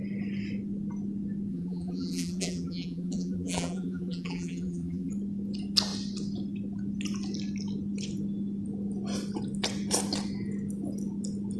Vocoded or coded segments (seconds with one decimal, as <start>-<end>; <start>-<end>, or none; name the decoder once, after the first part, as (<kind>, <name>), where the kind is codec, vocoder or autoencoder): 1.5-5.1 (vocoder, BigVGAN v2)